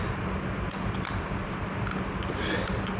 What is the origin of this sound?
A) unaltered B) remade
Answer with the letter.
A